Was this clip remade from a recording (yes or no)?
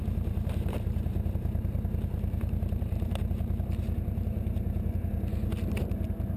yes